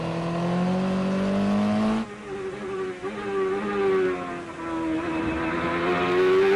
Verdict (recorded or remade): recorded